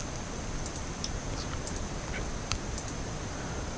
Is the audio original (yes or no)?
yes